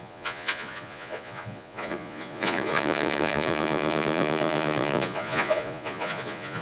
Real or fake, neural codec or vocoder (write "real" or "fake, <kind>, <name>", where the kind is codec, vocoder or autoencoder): fake, vocoder, Vocos